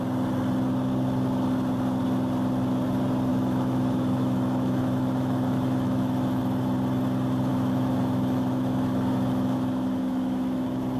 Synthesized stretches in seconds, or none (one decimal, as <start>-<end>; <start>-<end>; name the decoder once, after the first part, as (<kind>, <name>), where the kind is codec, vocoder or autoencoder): 3.3-6.4 (autoencoder, DAC-VAE); 7.5-11.0